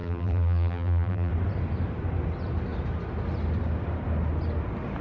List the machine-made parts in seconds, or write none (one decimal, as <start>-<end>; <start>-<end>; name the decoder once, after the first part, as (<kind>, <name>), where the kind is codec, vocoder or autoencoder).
0.0-1.3 (vocoder, BigVGAN v2)